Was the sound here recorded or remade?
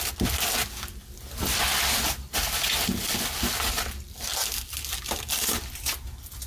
recorded